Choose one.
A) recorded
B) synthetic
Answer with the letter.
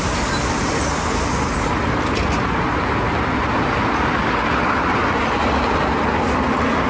A